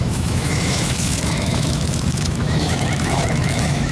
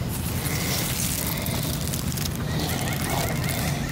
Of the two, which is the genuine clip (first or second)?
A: second